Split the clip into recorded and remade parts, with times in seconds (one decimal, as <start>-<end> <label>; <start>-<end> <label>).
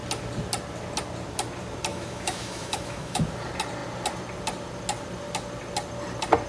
0.0-1.9 recorded; 1.9-3.2 remade; 3.2-6.5 recorded